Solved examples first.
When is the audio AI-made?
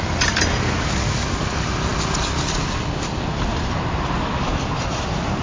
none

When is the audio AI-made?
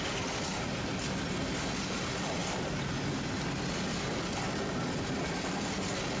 none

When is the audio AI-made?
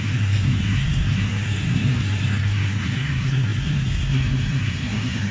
0.0-5.3 (codec, SNAC)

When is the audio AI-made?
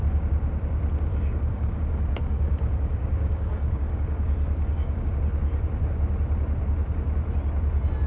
1.1-5.1 (codec, DAC)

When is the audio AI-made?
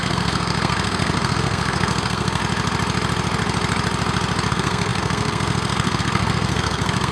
0.0-2.4 (codec, SNAC); 4.5-7.1